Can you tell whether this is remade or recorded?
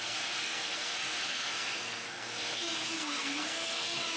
remade